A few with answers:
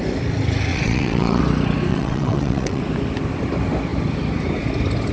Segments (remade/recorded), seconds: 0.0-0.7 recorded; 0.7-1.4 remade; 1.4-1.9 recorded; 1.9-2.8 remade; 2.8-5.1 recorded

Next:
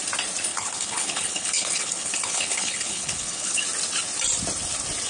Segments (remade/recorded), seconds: 0.0-0.5 recorded; 0.5-3.6 remade; 3.6-5.1 recorded